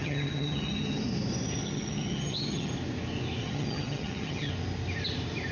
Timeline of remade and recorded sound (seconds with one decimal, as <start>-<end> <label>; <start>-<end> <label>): 0.0-1.0 remade; 1.0-1.6 recorded; 1.6-2.7 remade; 2.7-3.4 recorded; 3.4-4.5 remade; 4.5-5.5 recorded